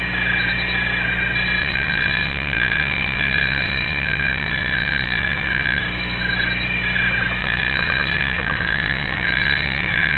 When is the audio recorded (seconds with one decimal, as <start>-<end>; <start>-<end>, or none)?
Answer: 0.0-1.6; 5.8-7.4